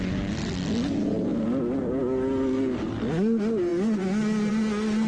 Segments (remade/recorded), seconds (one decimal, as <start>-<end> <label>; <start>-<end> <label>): 0.0-5.1 recorded